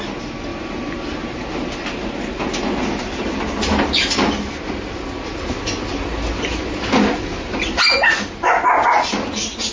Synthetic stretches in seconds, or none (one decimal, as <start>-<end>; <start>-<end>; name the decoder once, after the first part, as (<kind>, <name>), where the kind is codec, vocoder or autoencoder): none